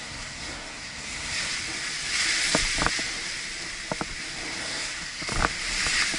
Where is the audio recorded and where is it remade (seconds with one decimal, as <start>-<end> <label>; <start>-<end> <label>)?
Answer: 0.0-1.5 remade; 1.5-4.6 recorded; 4.6-5.3 remade; 5.3-6.2 recorded